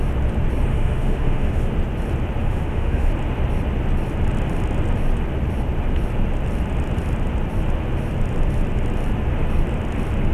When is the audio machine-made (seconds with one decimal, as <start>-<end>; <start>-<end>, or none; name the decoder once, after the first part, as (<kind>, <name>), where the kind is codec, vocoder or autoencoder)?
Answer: 0.7-1.7 (autoencoder, DAC-VAE); 2.4-3.1